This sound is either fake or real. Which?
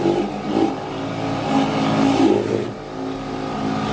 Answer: real